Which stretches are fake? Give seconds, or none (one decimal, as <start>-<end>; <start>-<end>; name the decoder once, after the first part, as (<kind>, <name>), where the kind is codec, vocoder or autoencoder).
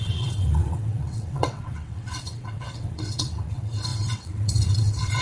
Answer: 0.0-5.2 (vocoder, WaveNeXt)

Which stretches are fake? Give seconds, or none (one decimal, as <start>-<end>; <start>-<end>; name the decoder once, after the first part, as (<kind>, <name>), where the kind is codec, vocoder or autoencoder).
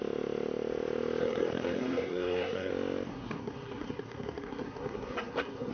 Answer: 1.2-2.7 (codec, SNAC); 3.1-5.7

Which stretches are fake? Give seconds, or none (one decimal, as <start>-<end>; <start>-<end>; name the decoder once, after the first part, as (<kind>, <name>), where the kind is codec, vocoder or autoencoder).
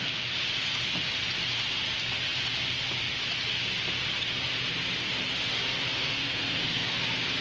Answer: 5.9-7.0 (codec, SNAC)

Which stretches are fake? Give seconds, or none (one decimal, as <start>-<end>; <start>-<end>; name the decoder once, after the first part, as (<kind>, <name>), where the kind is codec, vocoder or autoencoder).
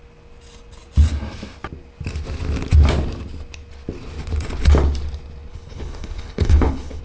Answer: 5.5-7.0 (codec, HILCodec)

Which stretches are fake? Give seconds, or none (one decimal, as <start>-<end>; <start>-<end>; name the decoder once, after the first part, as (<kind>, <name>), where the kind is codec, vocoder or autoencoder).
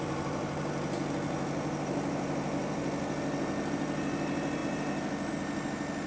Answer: none